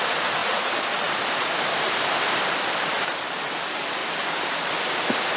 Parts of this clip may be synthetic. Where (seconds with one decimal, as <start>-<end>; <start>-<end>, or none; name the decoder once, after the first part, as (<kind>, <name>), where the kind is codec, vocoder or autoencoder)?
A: 0.4-3.6 (vocoder, BigVGAN v2)